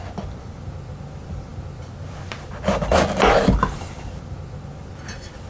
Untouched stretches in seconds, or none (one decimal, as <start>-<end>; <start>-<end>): 0.0-5.5